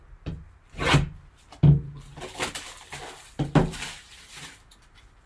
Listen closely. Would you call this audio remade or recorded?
recorded